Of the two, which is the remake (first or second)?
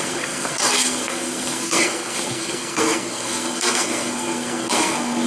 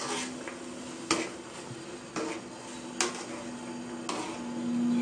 first